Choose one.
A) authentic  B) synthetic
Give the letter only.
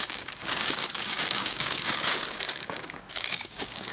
B